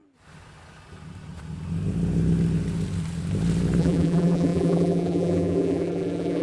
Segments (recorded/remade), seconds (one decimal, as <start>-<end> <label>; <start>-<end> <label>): 0.0-3.8 recorded; 3.8-6.4 remade